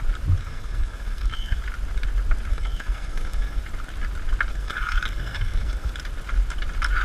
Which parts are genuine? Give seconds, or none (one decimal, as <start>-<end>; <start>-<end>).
0.0-0.4; 1.6-2.5; 3.6-4.5; 5.9-7.0